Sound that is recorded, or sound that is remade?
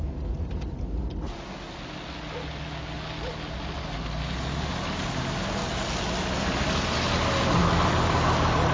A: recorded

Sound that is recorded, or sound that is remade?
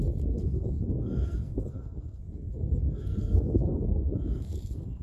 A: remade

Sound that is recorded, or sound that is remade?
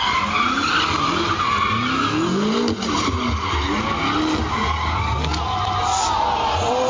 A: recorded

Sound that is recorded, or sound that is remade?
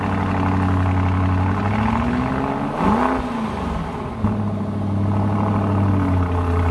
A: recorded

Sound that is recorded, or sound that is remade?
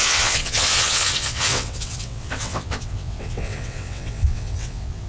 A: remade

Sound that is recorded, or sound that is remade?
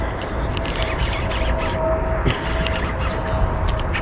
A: recorded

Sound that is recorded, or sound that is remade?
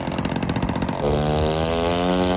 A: recorded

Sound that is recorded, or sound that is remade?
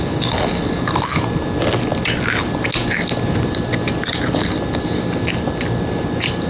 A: recorded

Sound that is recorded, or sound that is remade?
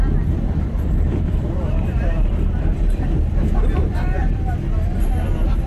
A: remade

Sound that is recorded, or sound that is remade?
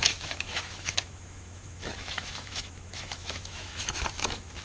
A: remade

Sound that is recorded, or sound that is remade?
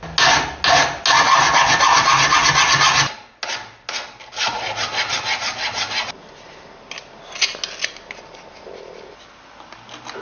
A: recorded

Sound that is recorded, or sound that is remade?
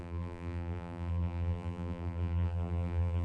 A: remade